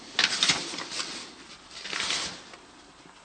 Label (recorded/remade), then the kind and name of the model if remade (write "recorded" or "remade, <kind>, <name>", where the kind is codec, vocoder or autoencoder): recorded